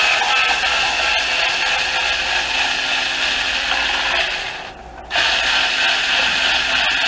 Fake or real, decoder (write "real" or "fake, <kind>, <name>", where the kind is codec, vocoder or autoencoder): real